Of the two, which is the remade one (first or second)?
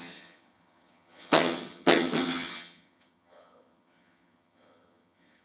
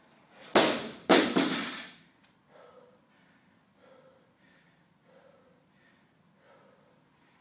first